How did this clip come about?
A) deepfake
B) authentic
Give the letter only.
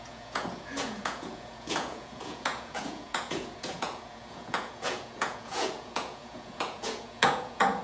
A